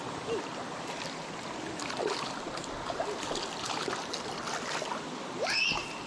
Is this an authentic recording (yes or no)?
yes